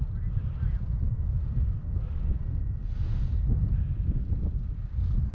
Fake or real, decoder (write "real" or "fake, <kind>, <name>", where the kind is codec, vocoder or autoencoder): real